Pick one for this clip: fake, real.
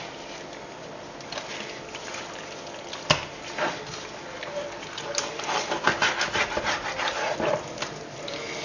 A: real